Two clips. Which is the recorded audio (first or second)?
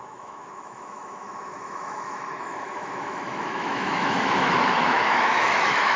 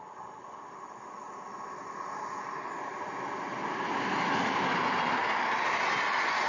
second